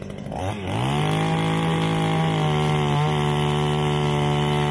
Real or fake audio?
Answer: real